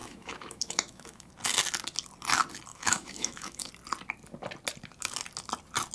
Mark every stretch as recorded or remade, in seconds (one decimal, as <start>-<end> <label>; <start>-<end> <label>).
0.0-1.3 remade; 1.3-2.7 recorded; 2.7-3.7 remade; 3.7-5.9 recorded